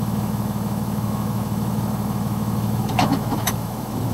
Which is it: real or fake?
fake